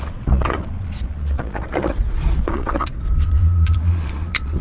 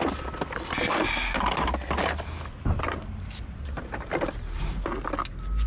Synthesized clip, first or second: first